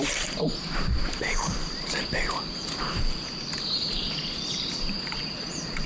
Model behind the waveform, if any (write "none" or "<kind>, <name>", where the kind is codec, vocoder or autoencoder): none